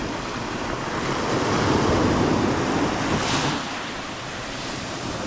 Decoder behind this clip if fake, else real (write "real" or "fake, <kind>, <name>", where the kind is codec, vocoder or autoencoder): real